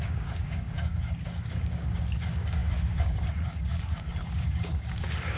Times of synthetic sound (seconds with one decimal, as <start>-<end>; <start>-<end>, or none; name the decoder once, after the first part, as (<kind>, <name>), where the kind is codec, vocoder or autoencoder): 0.0-5.4 (codec, DAC)